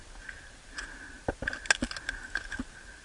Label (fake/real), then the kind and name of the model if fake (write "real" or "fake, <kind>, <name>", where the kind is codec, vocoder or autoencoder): real